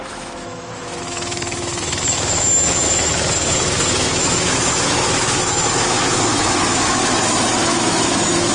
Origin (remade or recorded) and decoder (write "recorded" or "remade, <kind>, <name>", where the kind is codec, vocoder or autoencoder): remade, autoencoder, DAC-VAE